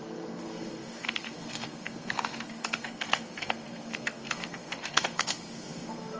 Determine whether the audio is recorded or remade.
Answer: remade